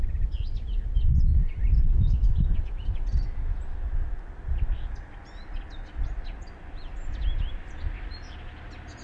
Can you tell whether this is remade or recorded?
recorded